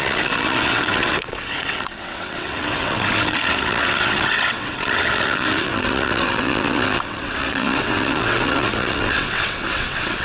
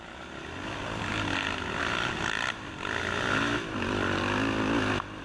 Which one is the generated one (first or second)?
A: first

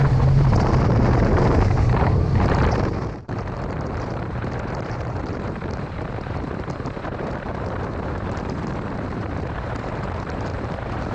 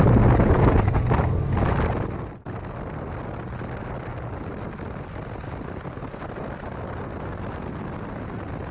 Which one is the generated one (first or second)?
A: first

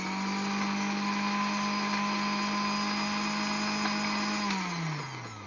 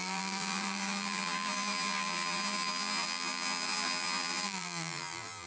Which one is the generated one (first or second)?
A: second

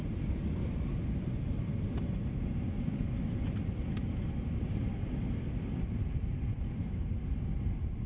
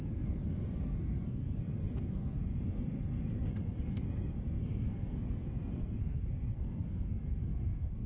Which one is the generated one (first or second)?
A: second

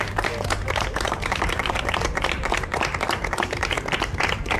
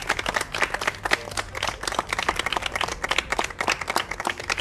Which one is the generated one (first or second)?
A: first